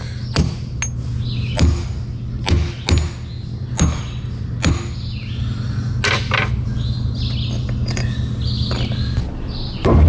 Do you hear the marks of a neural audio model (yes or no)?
no